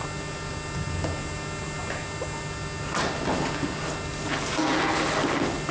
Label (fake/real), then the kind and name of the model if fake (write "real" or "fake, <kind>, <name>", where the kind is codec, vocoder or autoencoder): real